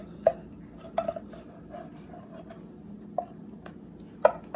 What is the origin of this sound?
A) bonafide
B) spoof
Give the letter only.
A